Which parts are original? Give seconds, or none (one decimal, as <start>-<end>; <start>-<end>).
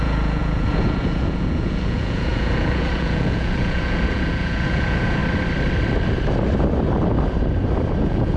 5.2-8.0